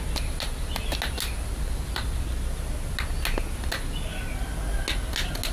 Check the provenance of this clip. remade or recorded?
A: recorded